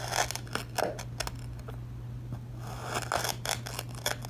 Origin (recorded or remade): recorded